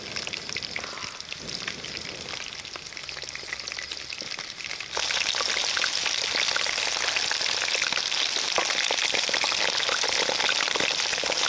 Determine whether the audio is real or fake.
real